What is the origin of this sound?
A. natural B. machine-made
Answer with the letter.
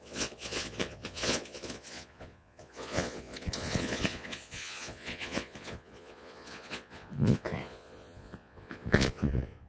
B